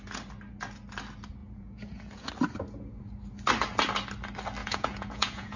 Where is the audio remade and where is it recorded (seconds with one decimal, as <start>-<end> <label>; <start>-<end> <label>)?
0.0-1.4 recorded; 1.4-2.3 remade; 2.3-4.6 recorded; 4.6-5.6 remade